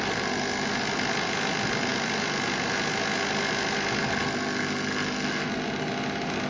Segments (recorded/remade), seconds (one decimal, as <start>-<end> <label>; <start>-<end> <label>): 0.0-6.5 recorded